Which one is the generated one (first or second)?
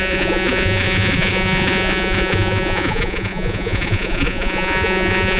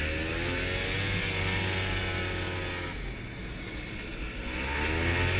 first